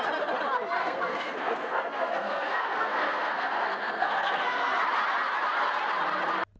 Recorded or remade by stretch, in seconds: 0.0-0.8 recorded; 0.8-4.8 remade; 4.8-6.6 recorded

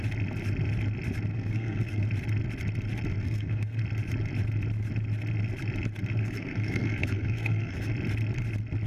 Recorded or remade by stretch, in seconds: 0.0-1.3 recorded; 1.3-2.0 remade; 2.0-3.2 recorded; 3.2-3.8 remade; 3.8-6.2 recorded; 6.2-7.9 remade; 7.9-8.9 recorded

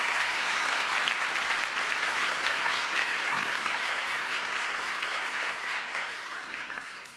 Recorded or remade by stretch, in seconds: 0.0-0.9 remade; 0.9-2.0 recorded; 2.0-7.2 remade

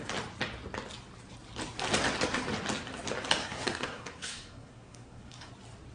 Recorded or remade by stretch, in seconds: 0.0-3.4 recorded; 3.4-5.5 remade; 5.5-5.9 recorded